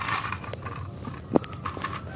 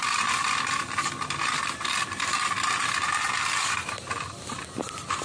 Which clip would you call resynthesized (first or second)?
second